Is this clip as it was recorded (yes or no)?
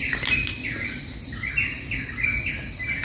yes